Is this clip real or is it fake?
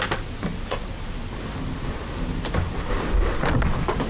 real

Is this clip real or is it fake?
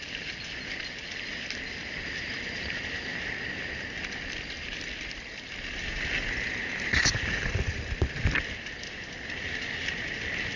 real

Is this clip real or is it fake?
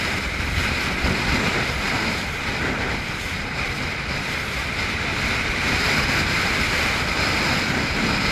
fake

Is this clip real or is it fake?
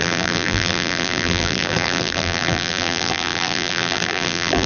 fake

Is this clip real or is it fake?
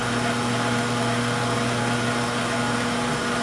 real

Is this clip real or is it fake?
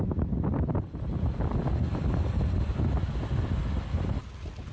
real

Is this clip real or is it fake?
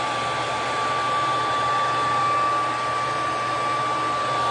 real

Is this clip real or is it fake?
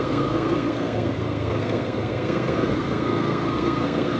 fake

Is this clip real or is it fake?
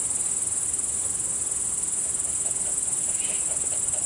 real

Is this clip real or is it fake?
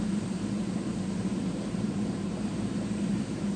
fake